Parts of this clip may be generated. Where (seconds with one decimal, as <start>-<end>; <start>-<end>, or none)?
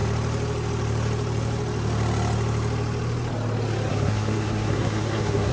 3.9-5.5